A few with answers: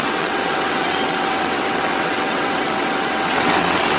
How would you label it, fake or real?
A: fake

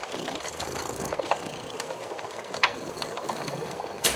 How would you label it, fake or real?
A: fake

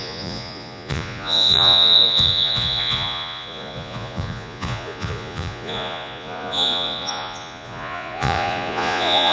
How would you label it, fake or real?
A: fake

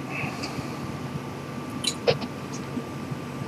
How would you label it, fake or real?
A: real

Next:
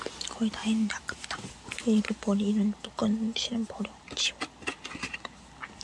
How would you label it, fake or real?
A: real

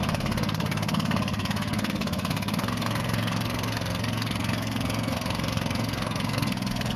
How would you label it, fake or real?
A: fake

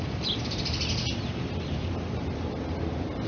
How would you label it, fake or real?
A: real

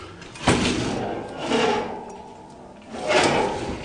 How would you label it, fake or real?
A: real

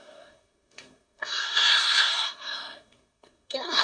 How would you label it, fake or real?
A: fake